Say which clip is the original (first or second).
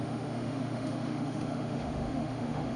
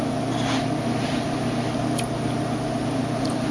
second